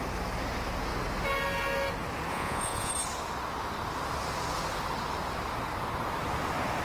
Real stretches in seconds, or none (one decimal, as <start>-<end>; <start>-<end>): 0.0-2.3; 2.9-6.8